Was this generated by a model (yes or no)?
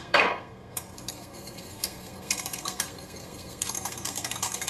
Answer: yes